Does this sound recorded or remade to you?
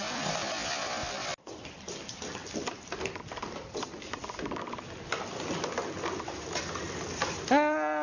recorded